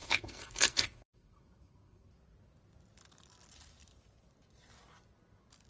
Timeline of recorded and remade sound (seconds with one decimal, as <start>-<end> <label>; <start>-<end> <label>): 0.0-2.1 remade; 2.1-5.7 recorded